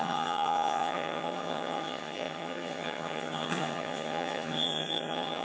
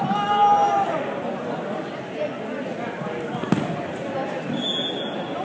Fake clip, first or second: first